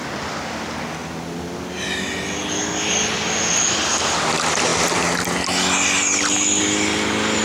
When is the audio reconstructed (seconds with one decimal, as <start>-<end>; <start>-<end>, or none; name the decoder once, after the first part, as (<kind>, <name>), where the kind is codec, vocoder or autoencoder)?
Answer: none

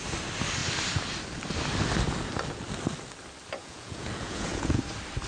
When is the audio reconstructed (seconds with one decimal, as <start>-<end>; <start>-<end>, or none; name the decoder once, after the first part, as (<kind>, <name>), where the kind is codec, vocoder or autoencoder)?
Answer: 3.6-4.8 (vocoder, Vocos)

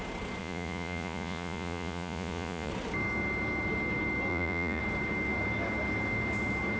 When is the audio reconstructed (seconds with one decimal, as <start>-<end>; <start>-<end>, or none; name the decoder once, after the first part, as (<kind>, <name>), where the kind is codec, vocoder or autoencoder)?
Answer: 0.4-2.7 (vocoder, Vocos); 4.3-4.8

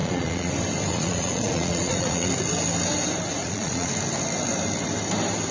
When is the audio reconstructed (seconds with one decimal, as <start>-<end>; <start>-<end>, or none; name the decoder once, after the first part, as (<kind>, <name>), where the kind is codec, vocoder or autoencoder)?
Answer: 0.0-0.5 (vocoder, Vocos); 0.9-2.3; 3.4-3.9

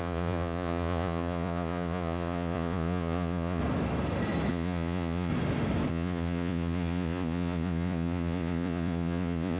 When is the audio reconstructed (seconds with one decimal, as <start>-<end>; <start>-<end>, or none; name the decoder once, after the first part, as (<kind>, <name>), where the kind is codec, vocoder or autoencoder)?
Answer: 0.0-3.6 (vocoder, Vocos); 4.5-5.3; 5.9-9.6

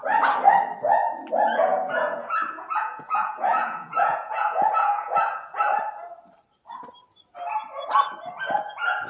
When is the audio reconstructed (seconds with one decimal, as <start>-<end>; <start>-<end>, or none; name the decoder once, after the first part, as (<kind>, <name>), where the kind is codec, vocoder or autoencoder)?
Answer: 1.7-5.6 (vocoder, Vocos)